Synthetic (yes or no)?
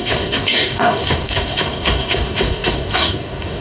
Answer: yes